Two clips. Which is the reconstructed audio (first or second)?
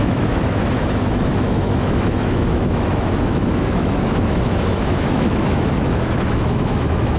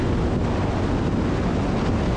first